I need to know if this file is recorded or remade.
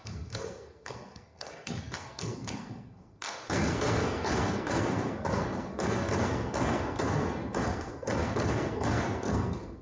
remade